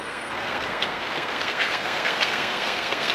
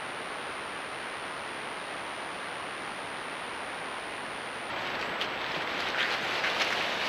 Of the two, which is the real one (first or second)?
second